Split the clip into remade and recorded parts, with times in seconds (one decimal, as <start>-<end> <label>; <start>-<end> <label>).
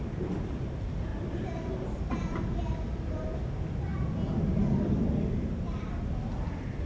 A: 0.0-6.9 recorded